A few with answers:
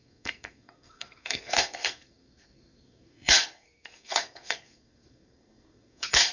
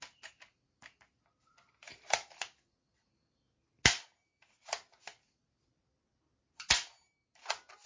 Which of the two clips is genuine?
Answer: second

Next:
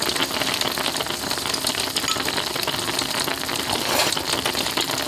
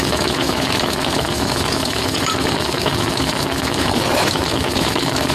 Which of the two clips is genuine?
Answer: first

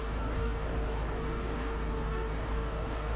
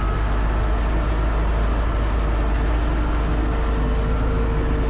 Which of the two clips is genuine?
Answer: second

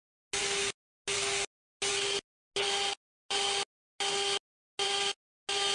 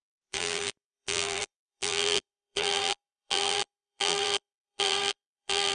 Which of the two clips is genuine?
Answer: first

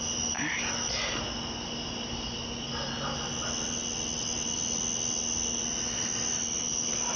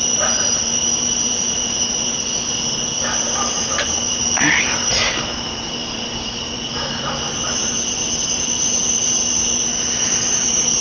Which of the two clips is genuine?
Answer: first